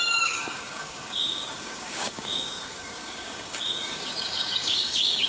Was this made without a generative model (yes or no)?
no